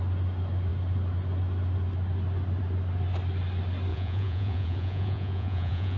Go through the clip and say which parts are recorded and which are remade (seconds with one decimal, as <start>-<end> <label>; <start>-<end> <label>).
0.0-3.9 recorded; 3.9-6.0 remade